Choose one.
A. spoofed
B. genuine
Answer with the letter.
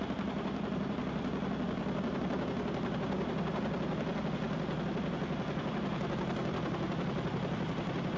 B